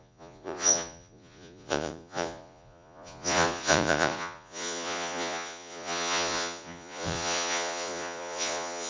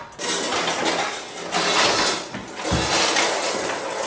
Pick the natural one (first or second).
second